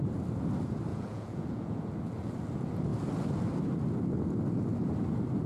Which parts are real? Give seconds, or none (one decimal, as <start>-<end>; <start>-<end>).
0.0-0.9; 2.3-5.5